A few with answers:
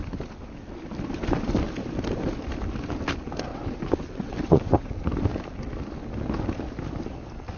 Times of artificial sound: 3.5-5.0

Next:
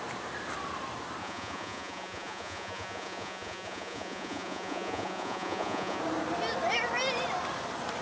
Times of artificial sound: 1.2-6.0